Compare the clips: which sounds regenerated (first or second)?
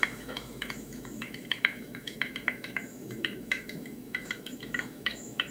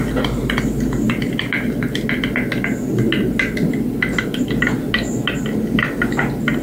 first